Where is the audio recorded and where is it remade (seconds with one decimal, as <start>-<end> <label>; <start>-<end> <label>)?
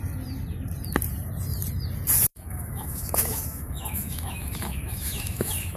0.0-2.3 recorded; 2.3-5.8 remade